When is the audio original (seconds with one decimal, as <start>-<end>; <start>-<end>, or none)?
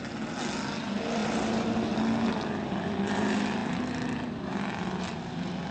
0.0-5.7